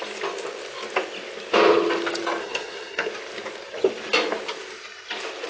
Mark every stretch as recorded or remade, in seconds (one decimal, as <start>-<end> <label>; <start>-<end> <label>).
0.0-2.4 recorded; 2.4-3.1 remade; 3.1-5.5 recorded